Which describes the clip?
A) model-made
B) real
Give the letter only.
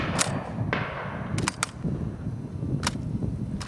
B